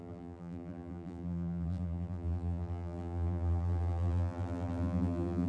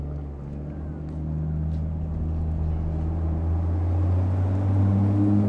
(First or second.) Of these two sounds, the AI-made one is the first